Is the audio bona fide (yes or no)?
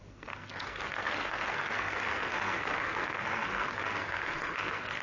no